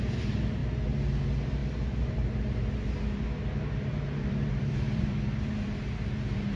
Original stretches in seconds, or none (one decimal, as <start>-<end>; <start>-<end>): 0.6-1.2